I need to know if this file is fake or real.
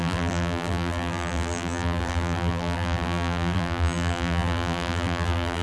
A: fake